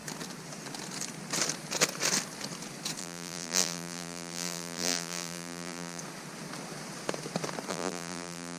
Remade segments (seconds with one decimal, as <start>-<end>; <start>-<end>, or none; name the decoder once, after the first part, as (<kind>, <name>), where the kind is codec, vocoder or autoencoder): 3.0-6.0 (vocoder, BigVGAN v2); 7.7-8.6

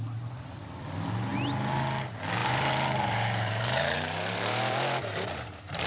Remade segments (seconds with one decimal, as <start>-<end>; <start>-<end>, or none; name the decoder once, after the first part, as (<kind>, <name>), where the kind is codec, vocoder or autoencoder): 2.4-5.9 (vocoder, BigVGAN v2)

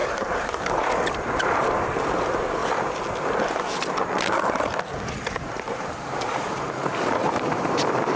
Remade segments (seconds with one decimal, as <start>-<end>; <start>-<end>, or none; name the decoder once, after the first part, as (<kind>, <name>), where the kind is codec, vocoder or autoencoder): 0.0-2.6 (vocoder, BigVGAN v2); 5.4-8.2

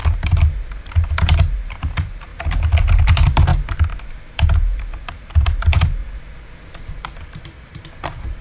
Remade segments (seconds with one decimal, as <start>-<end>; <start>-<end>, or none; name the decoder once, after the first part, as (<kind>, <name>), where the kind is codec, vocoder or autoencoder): 0.0-2.3 (vocoder, BigVGAN v2); 3.0-3.5; 4.1-6.0; 6.9-8.4

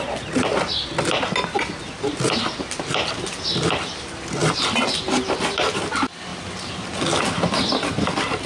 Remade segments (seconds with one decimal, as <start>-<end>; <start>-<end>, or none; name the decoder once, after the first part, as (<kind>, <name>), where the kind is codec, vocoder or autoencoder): 4.4-5.0 (vocoder, BigVGAN v2)

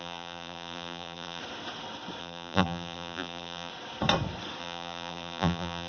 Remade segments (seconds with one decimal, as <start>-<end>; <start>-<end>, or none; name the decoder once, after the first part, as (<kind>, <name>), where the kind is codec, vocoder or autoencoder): 0.0-1.4 (vocoder, BigVGAN v2); 2.2-3.7; 4.6-5.9